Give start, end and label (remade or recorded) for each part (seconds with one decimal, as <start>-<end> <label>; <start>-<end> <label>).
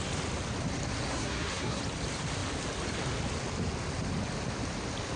0.0-1.1 recorded; 1.1-1.8 remade; 1.8-5.2 recorded